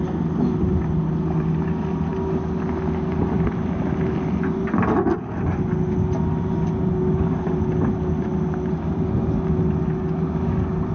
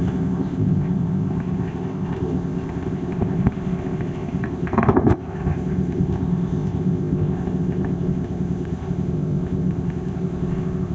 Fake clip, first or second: second